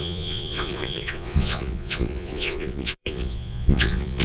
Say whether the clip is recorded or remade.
remade